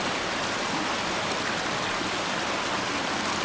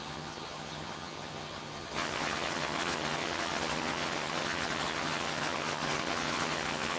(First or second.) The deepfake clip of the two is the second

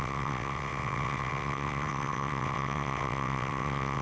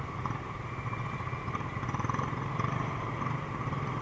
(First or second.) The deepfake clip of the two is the first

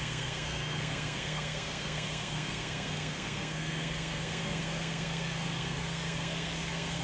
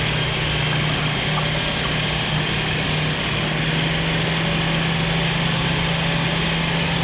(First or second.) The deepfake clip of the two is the first